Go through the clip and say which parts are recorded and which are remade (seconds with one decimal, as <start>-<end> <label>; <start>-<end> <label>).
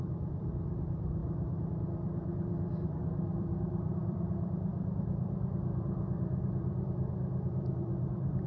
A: 0.0-1.2 remade; 1.2-1.7 recorded; 1.7-8.5 remade